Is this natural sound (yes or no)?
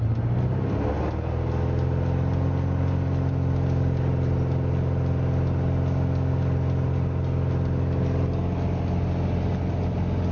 yes